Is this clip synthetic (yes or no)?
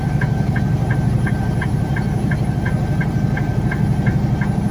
no